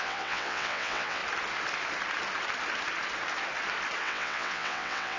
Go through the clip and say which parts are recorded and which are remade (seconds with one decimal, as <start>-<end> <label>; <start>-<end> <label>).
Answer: 0.0-1.2 remade; 1.2-4.0 recorded; 4.0-5.2 remade